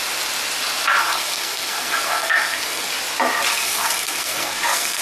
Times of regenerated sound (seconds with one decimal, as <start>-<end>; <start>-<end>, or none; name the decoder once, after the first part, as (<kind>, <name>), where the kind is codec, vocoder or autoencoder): 1.0-2.9 (codec, SNAC); 3.5-5.0